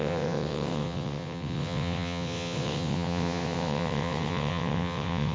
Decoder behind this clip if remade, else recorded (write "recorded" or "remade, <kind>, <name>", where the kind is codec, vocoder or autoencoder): remade, vocoder, WaveNeXt